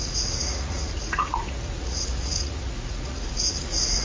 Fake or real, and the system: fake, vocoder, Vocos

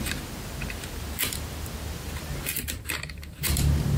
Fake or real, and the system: fake, vocoder, BigVGAN v2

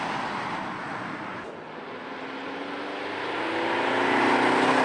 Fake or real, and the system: real